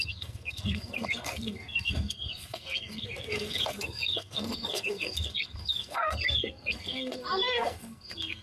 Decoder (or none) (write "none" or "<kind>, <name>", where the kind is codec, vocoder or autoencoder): codec, SNAC